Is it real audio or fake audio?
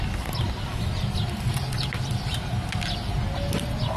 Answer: real